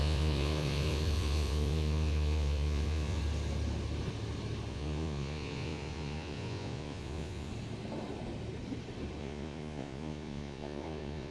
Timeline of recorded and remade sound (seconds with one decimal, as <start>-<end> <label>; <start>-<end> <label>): 0.0-3.2 remade; 3.2-4.7 recorded; 4.7-7.5 remade; 7.5-9.2 recorded; 9.2-11.3 remade